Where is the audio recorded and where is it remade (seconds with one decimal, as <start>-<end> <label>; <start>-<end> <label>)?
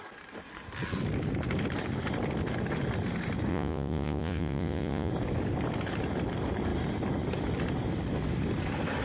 0.0-3.5 recorded; 3.5-5.1 remade; 5.1-9.0 recorded